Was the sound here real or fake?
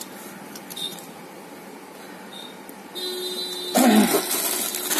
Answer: real